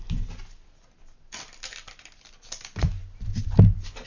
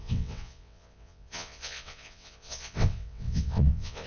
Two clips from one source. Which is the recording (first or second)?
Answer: first